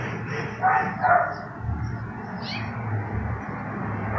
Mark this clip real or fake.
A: real